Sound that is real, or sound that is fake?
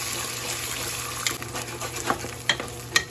real